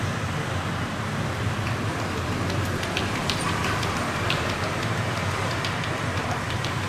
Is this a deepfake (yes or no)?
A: yes